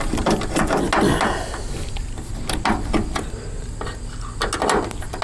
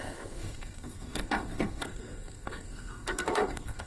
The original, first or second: first